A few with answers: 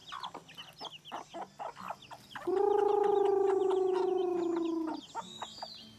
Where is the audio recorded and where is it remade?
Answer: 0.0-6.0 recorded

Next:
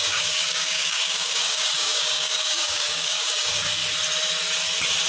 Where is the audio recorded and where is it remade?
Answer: 0.0-3.8 remade; 3.8-5.1 recorded